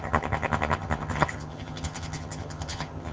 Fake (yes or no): yes